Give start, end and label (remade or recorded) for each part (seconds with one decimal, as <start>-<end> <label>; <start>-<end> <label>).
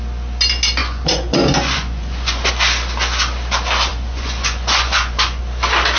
0.0-0.8 recorded; 0.8-2.5 remade; 2.5-3.9 recorded; 3.9-5.4 remade; 5.4-6.0 recorded